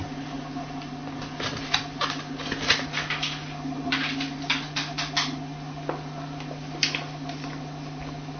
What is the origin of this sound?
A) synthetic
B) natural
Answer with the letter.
B